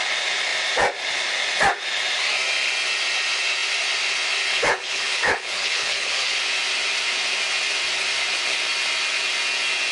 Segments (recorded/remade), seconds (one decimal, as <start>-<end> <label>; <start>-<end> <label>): 0.0-4.5 recorded; 4.5-6.4 remade; 6.4-9.9 recorded